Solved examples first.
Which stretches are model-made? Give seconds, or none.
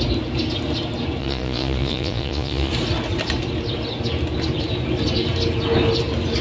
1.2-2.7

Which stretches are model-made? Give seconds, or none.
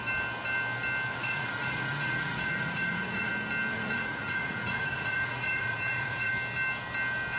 1.1-3.3; 3.7-6.3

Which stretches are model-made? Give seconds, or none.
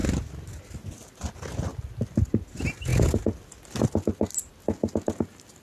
none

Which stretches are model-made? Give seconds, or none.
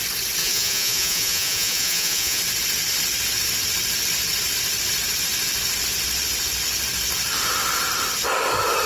0.4-2.4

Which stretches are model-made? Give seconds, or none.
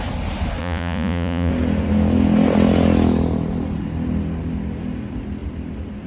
0.6-1.5